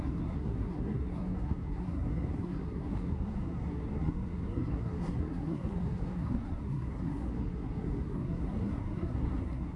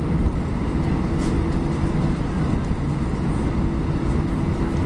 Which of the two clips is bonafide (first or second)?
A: second